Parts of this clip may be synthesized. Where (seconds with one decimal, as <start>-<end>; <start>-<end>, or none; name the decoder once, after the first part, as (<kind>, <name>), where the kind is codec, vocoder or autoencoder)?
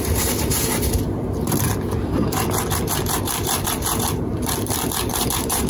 0.0-5.7 (vocoder, BigVGAN v2)